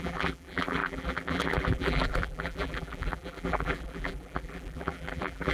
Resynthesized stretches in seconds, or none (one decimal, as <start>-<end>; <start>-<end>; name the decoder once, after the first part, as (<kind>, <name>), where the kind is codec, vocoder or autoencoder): 0.0-5.5 (vocoder, BigVGAN v2)